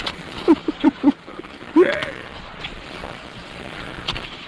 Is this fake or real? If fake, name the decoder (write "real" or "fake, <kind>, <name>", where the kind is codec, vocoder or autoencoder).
fake, vocoder, Vocos